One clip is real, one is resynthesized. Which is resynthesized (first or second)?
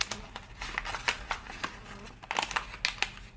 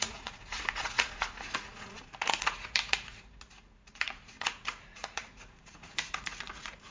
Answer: second